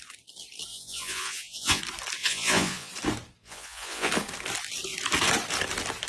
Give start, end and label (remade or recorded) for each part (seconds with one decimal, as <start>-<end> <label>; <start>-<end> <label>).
0.0-0.7 recorded; 0.7-1.8 remade; 1.8-2.2 recorded; 2.2-2.9 remade; 2.9-3.4 recorded; 3.4-4.1 remade; 4.1-6.1 recorded